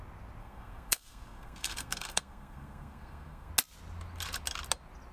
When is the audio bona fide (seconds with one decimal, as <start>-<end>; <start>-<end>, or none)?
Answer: 0.0-0.4; 3.5-5.1